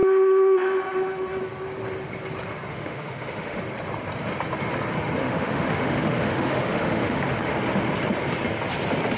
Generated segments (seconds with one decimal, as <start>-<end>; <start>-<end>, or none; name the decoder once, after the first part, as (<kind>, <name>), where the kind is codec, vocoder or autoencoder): 0.0-1.4 (autoencoder, DAC-VAE); 2.7-3.6; 5.2-7.2